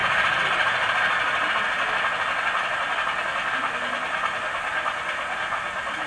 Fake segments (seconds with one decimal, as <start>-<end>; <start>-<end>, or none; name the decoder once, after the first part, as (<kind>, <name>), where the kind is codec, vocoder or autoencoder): 0.0-1.5 (vocoder, BigVGAN v2)